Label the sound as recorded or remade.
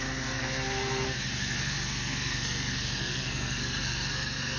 remade